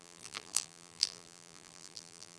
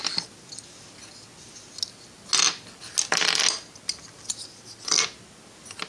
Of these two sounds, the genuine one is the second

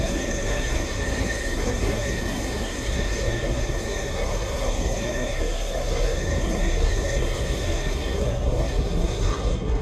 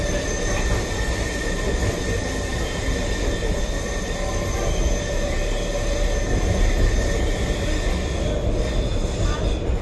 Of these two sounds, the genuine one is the second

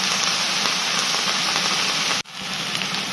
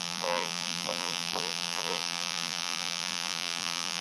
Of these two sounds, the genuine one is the first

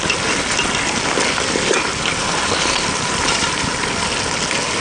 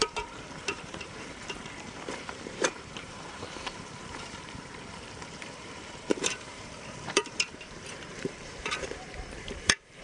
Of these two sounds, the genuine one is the first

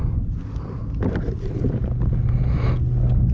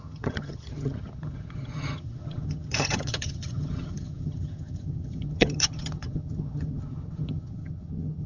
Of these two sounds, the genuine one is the first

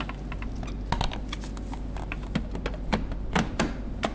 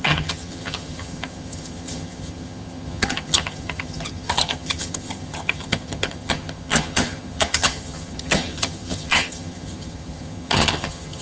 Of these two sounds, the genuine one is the first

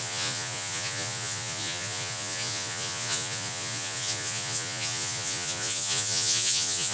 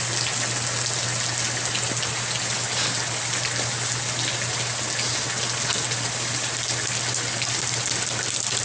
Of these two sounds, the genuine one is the second